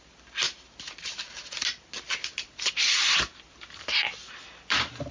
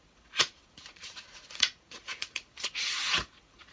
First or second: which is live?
first